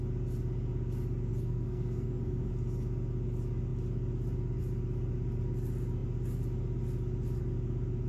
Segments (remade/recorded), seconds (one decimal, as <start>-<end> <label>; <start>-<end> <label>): 0.0-1.3 recorded; 1.3-2.5 remade; 2.5-8.1 recorded